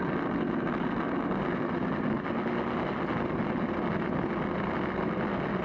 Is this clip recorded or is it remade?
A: recorded